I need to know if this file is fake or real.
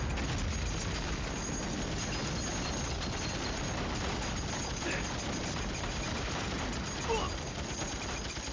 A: real